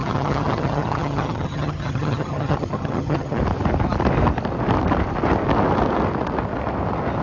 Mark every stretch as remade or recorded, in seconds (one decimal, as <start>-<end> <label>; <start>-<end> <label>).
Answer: 0.0-3.4 remade; 3.4-7.2 recorded